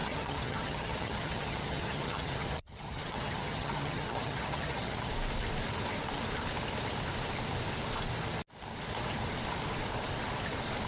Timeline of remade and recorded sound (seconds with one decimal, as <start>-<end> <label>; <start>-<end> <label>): 0.0-5.1 remade; 5.1-10.9 recorded

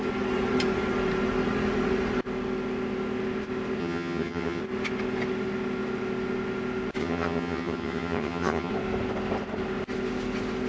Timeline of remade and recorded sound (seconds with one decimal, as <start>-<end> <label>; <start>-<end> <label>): 0.0-3.8 recorded; 3.8-4.6 remade; 4.6-7.0 recorded; 7.0-8.7 remade; 8.7-10.7 recorded

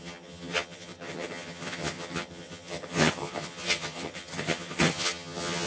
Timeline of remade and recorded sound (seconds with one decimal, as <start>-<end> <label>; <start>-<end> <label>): 0.0-5.7 remade

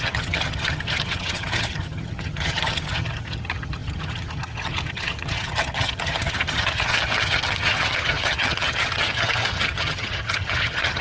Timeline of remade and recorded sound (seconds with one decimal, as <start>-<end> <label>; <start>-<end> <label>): 0.0-11.0 remade

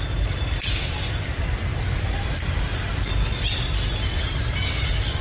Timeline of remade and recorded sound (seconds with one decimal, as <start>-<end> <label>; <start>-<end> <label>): 0.0-5.2 recorded

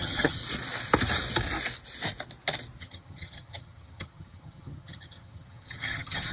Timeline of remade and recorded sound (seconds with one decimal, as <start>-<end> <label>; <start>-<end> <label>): 0.0-0.4 remade; 0.4-2.8 recorded; 2.8-6.3 remade

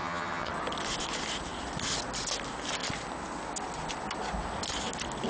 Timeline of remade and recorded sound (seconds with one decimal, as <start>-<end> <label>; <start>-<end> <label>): 0.0-0.5 remade; 0.5-5.3 recorded

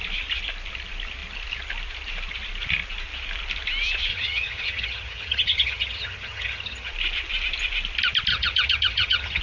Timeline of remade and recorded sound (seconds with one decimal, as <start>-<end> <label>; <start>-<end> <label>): 0.0-4.1 recorded; 4.1-6.9 remade; 6.9-8.3 recorded; 8.3-9.4 remade